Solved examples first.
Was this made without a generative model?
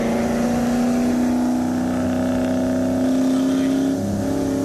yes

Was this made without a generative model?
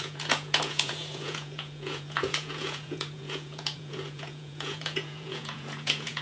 no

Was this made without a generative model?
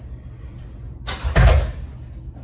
yes